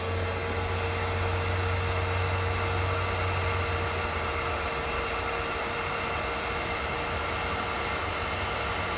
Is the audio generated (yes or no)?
no